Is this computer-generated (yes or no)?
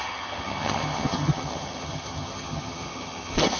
yes